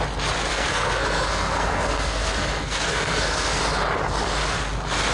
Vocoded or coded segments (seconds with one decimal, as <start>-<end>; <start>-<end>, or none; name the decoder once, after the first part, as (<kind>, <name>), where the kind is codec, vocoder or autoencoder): 0.5-3.6 (codec, SNAC)